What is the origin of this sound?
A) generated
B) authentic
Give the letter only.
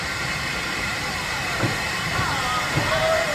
A